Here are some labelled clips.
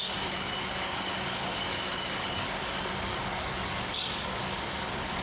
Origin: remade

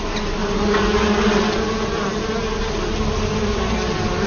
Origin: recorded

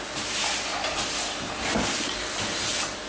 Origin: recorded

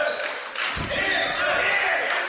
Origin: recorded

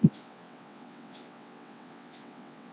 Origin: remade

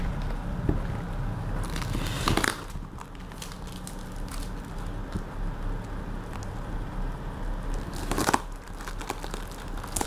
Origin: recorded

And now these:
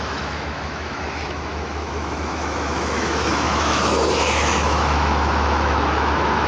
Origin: remade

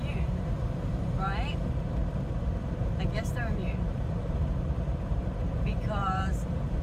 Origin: remade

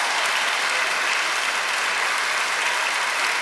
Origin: recorded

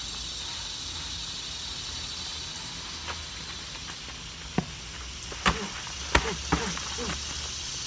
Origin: recorded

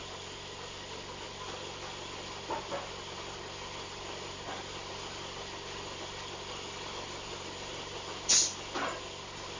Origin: recorded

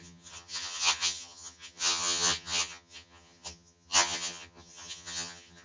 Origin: remade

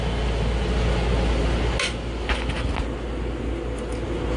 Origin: recorded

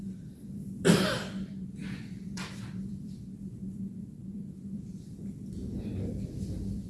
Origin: remade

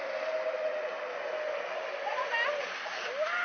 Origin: recorded